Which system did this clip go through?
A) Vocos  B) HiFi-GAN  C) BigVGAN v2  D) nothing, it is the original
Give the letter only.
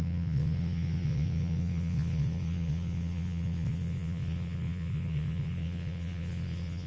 A